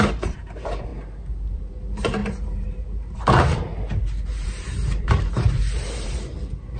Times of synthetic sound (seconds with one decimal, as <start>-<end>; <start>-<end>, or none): 0.0-0.9; 1.5-6.8

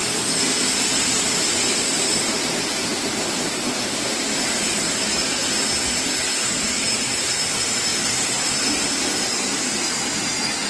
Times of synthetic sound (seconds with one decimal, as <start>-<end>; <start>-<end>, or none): 0.9-5.4; 6.4-10.7